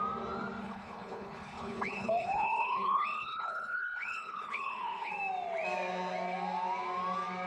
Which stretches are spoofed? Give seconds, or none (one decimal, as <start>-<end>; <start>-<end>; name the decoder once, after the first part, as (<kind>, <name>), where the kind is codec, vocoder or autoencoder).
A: 0.6-5.1 (codec, HILCodec)